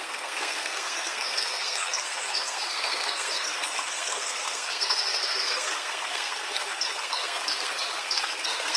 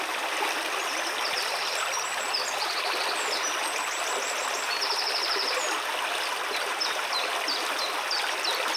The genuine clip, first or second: second